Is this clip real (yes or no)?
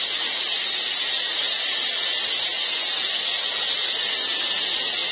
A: yes